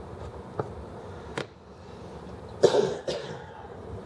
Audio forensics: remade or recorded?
recorded